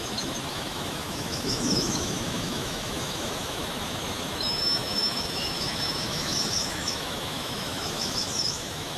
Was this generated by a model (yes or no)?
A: yes